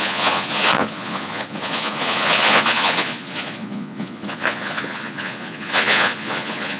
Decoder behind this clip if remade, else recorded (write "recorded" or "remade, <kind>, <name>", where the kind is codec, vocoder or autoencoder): remade, vocoder, Vocos